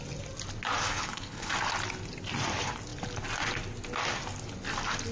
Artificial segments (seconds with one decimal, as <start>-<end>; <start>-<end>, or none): 1.0-1.5